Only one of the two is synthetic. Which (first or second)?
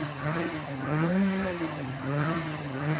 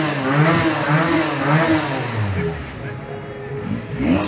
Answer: first